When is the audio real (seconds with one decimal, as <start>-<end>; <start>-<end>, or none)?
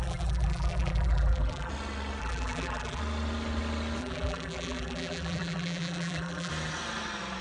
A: 1.7-2.2; 3.0-4.0; 6.5-7.4